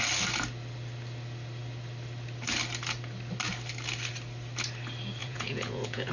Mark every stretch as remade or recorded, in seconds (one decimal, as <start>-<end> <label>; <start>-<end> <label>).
0.0-5.2 recorded; 5.2-6.1 remade